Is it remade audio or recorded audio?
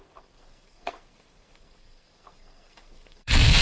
remade